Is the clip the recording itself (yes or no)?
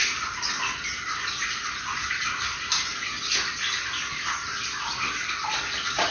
yes